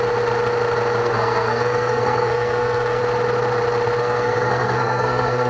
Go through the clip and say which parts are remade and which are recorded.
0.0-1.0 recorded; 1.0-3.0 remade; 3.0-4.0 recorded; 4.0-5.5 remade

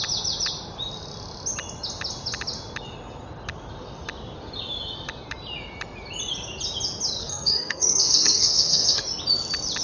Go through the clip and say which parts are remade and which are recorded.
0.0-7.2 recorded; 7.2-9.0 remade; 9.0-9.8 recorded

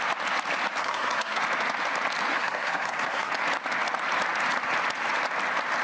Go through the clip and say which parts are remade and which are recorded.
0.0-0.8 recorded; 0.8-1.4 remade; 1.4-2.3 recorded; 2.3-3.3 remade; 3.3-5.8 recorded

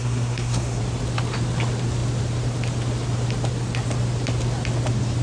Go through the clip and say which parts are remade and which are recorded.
0.0-0.8 remade; 0.8-5.2 recorded

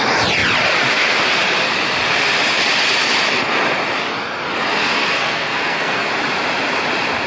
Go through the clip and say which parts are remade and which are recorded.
0.0-4.7 recorded; 4.7-6.1 remade; 6.1-7.3 recorded

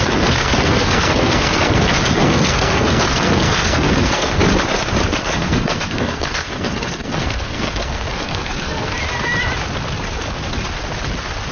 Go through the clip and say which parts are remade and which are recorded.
0.0-4.4 remade; 4.4-5.2 recorded; 5.2-9.0 remade; 9.0-11.5 recorded

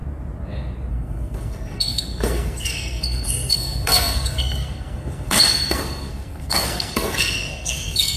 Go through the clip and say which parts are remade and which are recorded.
0.0-0.9 recorded; 0.9-8.2 remade